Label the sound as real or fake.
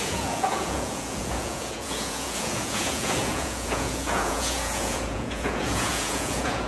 fake